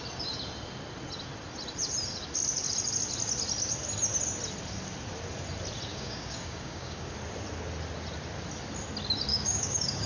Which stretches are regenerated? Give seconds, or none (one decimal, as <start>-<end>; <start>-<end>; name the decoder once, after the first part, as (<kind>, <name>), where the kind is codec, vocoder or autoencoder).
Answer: 5.9-7.1 (codec, DAC); 9.3-10.1